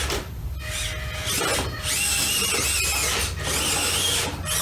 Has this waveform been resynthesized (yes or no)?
no